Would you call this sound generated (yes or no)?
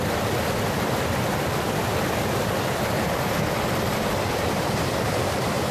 no